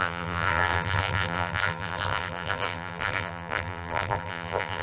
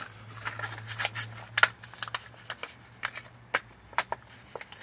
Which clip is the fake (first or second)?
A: first